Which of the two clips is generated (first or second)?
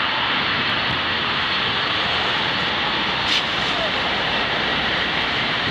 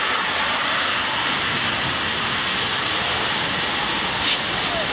first